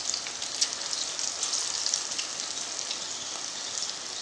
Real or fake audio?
real